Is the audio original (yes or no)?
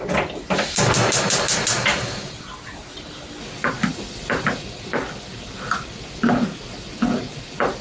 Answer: yes